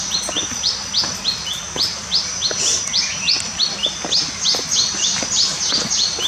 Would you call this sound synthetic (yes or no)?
no